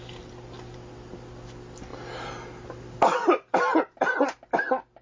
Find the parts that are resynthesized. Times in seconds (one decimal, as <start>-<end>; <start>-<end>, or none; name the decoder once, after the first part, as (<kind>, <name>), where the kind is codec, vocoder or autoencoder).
none